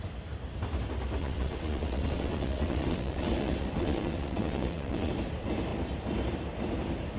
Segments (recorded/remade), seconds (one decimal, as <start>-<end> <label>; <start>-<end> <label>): 0.0-1.2 recorded; 1.2-5.1 remade; 5.1-7.2 recorded